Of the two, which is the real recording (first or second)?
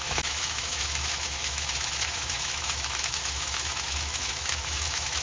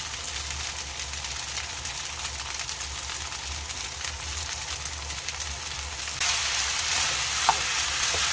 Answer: second